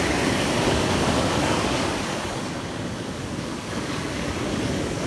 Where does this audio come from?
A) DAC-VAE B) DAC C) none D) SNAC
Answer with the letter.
B